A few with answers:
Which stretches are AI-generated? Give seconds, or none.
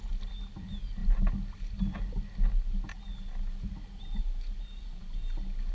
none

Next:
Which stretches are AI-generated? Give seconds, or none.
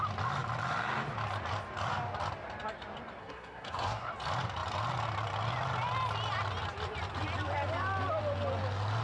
3.2-4.1 (codec, SNAC)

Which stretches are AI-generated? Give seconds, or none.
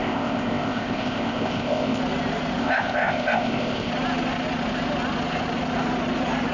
0.0-2.0 (codec, ZipCodec); 2.6-3.9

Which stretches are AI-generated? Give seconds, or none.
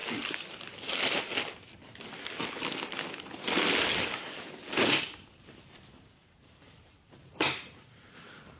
5.0-8.6 (vocoder, BigVGAN v2)